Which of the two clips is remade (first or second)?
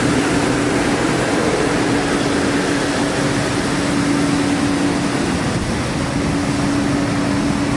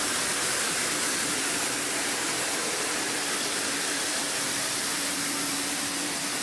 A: second